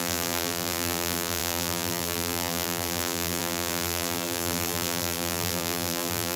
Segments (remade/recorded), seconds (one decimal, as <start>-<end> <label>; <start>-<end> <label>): 0.0-6.4 remade